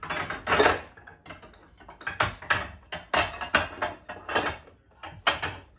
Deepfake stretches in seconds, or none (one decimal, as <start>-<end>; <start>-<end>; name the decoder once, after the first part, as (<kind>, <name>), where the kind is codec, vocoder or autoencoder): none